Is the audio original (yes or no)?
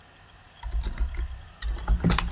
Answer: yes